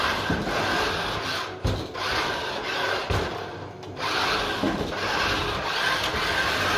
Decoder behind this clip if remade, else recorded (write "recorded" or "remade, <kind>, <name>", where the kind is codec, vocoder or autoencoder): recorded